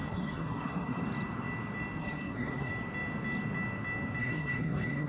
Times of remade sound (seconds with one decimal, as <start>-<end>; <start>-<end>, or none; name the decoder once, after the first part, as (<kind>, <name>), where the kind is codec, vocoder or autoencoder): 0.0-1.0 (codec, SNAC); 2.0-2.7; 4.2-5.1